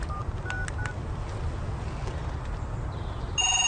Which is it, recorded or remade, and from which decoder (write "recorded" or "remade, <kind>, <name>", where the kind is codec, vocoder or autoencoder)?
recorded